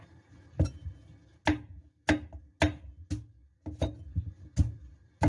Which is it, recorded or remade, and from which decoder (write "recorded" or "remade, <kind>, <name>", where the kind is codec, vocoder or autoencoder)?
recorded